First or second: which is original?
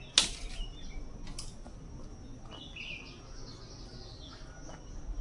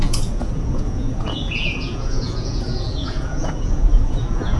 first